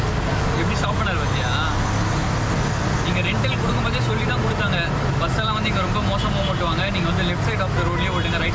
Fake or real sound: real